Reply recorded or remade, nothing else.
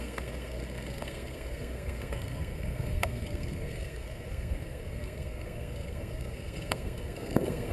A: remade